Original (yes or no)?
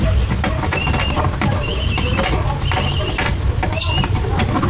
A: yes